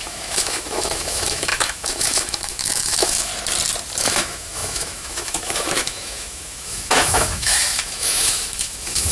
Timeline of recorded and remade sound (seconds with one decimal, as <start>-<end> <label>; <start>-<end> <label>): 0.0-3.3 remade; 3.3-4.0 recorded; 4.0-9.1 remade